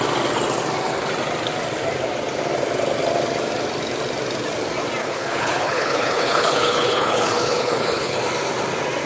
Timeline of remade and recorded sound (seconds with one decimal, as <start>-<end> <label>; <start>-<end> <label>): 0.0-5.0 recorded; 5.0-8.2 remade; 8.2-9.1 recorded

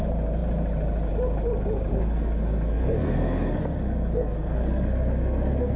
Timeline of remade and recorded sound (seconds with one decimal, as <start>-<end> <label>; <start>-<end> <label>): 0.0-1.9 recorded; 1.9-5.8 remade

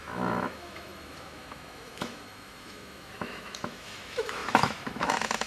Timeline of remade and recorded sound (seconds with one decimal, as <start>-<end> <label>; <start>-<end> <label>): 0.0-5.5 remade

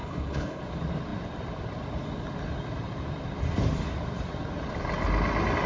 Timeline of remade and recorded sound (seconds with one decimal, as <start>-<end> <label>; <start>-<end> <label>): 0.0-0.6 remade; 0.6-5.7 recorded

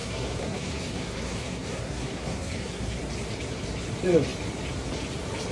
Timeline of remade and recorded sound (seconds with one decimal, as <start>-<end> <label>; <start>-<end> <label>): 0.0-3.0 remade; 3.0-5.5 recorded

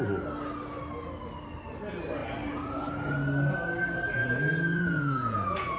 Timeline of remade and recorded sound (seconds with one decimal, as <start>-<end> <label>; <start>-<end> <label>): 0.0-4.2 recorded; 4.2-5.8 remade